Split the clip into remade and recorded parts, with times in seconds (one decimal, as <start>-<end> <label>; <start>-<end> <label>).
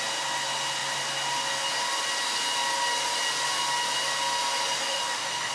0.0-4.9 recorded; 4.9-5.5 remade